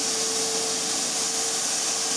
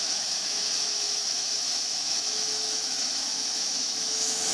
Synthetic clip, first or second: second